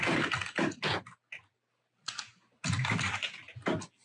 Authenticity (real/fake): real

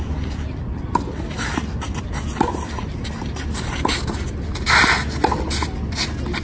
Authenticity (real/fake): real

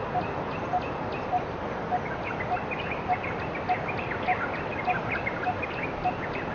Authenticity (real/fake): real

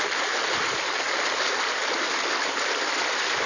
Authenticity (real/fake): real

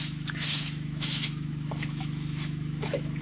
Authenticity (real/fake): fake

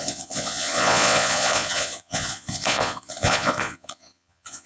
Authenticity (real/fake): fake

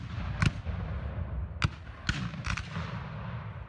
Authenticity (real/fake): real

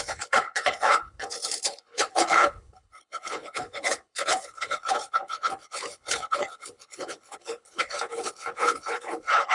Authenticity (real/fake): fake